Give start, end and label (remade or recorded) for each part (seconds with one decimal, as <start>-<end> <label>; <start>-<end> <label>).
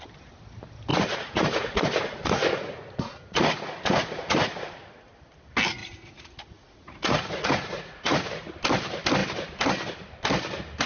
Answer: 0.0-0.9 recorded; 0.9-4.9 remade; 4.9-5.8 recorded; 5.8-8.3 remade; 8.3-10.9 recorded